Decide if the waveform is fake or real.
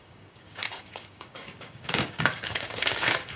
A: fake